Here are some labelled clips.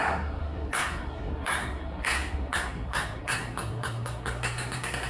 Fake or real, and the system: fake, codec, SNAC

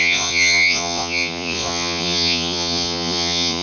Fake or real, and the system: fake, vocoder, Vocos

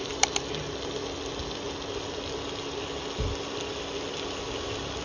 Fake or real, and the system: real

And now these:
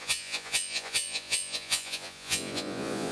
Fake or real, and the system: fake, vocoder, Vocos